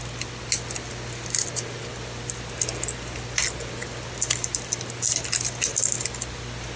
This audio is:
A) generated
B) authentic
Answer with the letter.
B